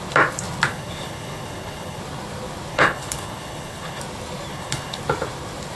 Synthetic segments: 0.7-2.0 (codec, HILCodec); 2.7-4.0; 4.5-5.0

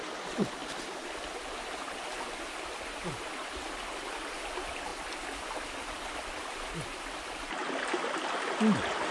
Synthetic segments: none

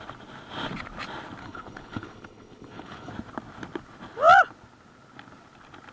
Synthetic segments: 1.4-3.1 (codec, HILCodec)

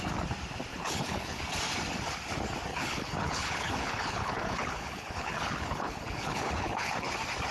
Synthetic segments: 0.7-1.4 (codec, HILCodec); 2.7-7.1

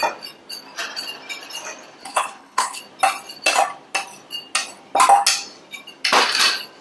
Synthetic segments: 2.0-2.8 (codec, HILCodec)

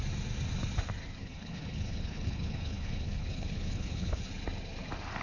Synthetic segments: 1.2-4.3 (codec, HILCodec)